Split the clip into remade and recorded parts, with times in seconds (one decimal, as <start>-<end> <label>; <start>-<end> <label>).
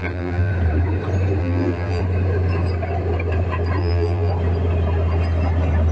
0.0-0.5 remade; 0.5-1.4 recorded; 1.4-2.0 remade; 2.0-3.8 recorded; 3.8-4.3 remade; 4.3-5.9 recorded